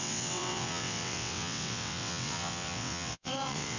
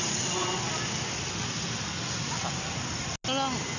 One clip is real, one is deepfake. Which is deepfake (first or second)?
first